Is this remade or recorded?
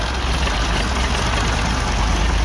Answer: recorded